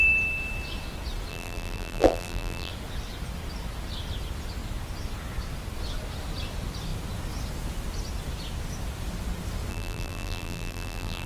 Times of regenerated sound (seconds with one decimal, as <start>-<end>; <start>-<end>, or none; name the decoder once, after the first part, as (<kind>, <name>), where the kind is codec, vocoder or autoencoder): 1.3-2.7 (vocoder, BigVGAN v2); 9.7-11.3